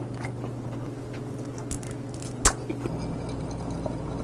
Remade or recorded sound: recorded